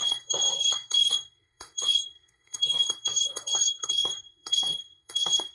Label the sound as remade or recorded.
remade